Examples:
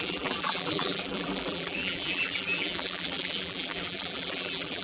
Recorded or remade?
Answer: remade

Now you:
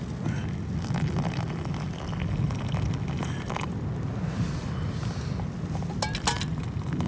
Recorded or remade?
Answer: recorded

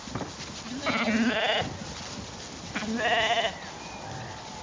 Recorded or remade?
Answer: recorded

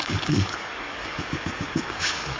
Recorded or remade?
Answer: remade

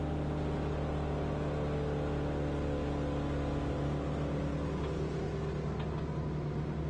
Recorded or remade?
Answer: recorded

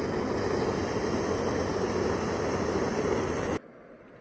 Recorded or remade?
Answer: recorded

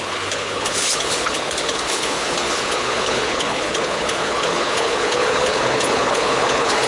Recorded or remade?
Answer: remade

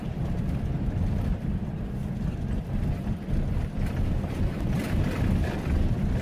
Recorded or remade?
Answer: recorded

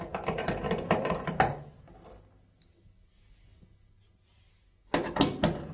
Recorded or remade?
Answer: recorded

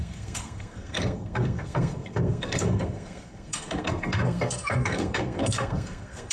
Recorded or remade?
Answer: remade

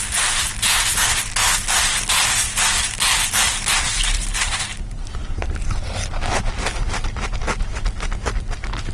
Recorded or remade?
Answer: recorded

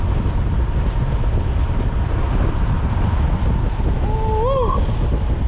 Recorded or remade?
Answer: recorded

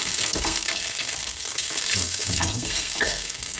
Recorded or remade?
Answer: remade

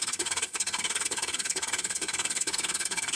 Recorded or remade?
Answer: remade